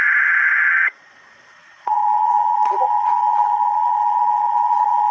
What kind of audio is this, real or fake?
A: fake